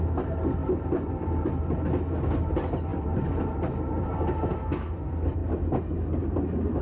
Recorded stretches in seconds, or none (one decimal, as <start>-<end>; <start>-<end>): 0.0-0.6; 1.1-2.9; 4.6-6.8